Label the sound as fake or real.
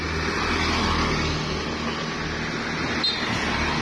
real